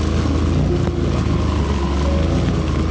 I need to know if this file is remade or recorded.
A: recorded